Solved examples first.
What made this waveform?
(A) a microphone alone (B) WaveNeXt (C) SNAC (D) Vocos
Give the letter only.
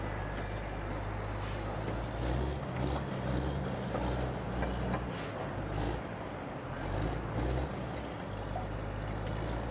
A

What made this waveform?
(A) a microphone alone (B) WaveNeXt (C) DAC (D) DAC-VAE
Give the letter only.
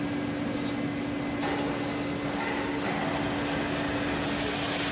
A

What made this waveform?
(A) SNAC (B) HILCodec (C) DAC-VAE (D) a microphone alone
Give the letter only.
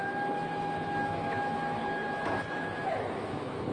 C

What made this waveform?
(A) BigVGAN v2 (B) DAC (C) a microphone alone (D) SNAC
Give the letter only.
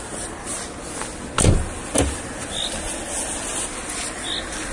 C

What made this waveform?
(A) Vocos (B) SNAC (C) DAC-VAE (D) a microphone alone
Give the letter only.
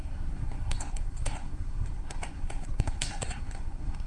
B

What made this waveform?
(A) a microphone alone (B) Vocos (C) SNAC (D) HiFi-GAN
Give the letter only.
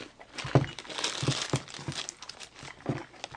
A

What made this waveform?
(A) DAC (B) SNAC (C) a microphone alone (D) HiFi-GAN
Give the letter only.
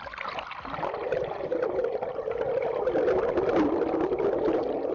C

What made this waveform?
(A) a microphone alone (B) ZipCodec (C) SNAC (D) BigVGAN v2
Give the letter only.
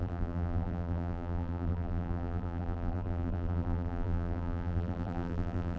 D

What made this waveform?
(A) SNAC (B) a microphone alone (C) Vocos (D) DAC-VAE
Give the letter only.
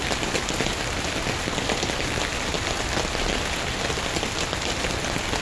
B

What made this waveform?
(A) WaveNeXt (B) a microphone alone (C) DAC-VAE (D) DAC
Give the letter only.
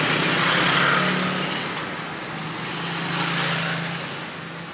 B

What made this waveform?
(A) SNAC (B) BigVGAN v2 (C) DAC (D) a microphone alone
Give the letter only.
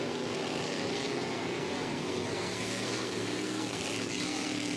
A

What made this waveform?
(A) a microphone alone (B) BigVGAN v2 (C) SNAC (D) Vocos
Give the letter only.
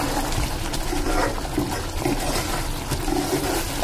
A